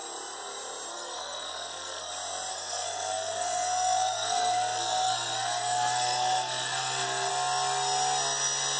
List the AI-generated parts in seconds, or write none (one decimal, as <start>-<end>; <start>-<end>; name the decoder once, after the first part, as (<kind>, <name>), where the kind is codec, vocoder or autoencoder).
0.9-2.1 (codec, SNAC); 2.5-7.3